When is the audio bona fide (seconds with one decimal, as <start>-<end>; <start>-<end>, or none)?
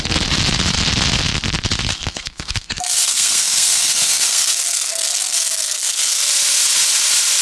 0.0-1.9; 6.3-7.4